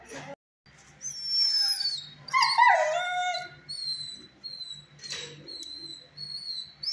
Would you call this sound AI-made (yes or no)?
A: no